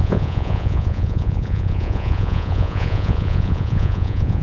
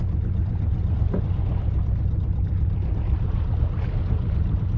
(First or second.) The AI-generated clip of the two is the first